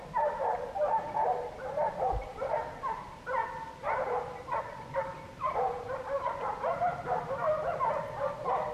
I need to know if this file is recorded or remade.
remade